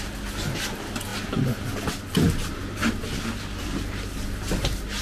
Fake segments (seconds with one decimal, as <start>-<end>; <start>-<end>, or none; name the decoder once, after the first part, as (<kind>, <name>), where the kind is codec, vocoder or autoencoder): none

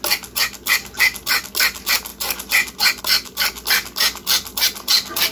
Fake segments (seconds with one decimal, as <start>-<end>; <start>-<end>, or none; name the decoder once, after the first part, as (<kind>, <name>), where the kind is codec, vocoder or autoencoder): none

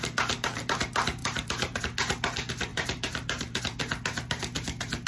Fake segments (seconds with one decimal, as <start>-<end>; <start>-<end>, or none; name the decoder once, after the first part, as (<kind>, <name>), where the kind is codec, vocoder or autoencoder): 1.2-1.8 (vocoder, BigVGAN v2); 2.7-3.6

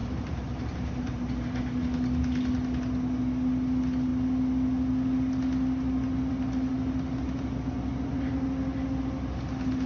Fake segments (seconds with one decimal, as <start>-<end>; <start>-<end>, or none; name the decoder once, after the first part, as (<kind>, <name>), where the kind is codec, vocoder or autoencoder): 0.0-1.6 (vocoder, BigVGAN v2)